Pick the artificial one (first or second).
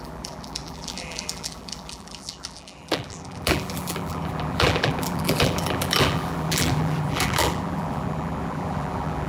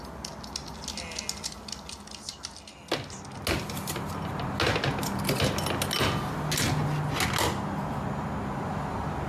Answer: first